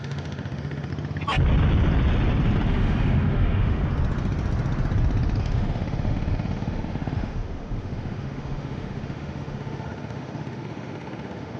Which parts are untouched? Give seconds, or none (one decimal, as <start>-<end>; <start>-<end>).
0.9-2.7; 3.8-5.4